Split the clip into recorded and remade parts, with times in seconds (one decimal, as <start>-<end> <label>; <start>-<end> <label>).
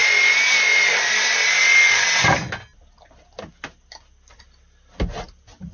0.0-5.7 recorded